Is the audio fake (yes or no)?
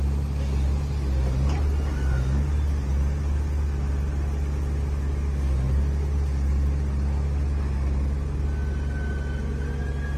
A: no